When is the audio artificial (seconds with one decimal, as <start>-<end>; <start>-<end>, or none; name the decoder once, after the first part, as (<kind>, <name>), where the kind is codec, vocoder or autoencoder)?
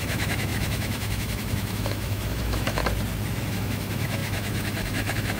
0.0-2.8 (autoencoder, DAC-VAE); 3.5-5.4